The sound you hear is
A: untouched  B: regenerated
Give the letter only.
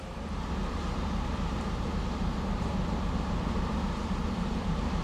B